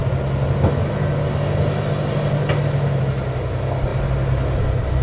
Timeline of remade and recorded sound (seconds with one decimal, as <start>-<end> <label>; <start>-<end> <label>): 0.0-5.0 recorded